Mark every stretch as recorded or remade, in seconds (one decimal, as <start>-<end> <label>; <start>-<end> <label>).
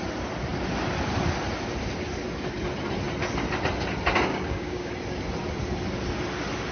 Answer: 0.0-4.3 recorded; 4.3-4.9 remade; 4.9-6.7 recorded